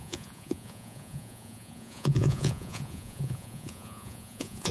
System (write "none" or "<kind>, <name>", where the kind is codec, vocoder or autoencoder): vocoder, Vocos